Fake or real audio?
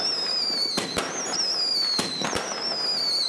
real